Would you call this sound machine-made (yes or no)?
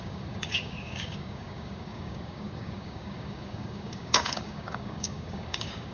yes